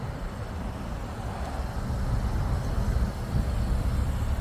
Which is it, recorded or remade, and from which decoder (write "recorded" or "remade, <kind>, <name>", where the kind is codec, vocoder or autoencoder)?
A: recorded